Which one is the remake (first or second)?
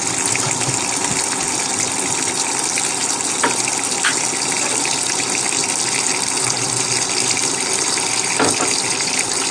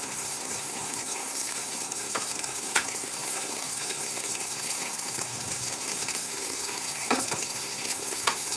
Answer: second